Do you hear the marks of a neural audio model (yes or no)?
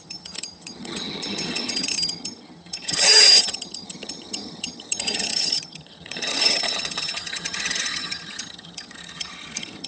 yes